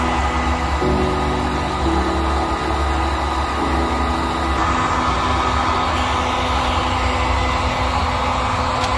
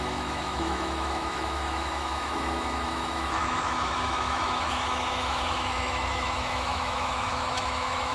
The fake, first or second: second